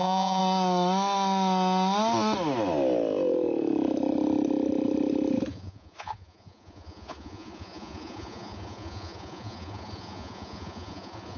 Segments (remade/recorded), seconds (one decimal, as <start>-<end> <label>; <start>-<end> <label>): 0.0-0.4 remade; 0.4-5.5 recorded; 5.5-11.4 remade